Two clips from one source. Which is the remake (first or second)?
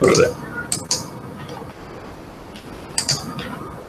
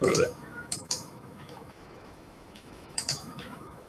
second